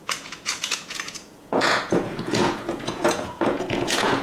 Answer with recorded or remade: remade